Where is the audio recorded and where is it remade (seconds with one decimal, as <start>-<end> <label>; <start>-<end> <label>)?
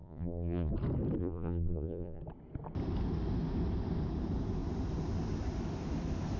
0.0-0.7 remade; 0.7-1.2 recorded; 1.2-2.2 remade; 2.2-6.4 recorded